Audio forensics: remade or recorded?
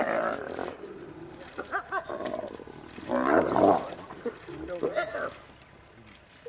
recorded